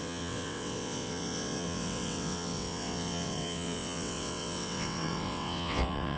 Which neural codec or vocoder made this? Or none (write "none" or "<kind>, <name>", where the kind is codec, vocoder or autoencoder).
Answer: vocoder, WaveNeXt